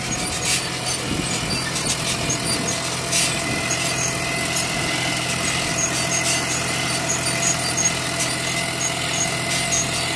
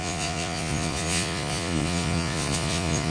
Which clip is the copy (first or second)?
second